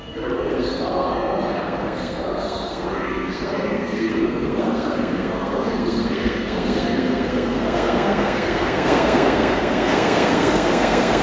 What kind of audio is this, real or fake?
fake